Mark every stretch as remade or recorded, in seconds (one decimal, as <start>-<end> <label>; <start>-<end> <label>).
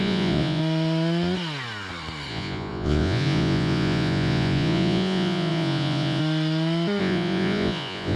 0.0-0.6 remade; 0.6-2.3 recorded; 2.3-6.2 remade; 6.2-7.0 recorded; 7.0-8.2 remade